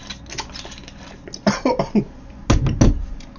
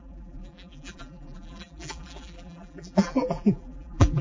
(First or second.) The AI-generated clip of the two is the second